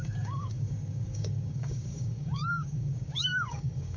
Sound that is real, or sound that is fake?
fake